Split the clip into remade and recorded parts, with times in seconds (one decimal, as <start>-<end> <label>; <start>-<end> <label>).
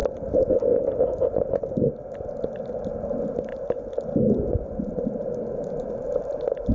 0.0-6.7 recorded